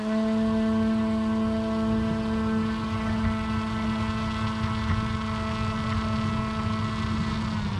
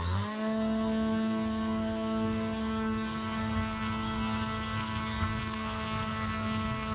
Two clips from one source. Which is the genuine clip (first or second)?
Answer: first